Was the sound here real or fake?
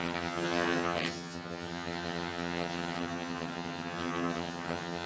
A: fake